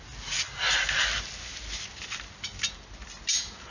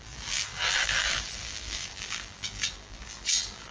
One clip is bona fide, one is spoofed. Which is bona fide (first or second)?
first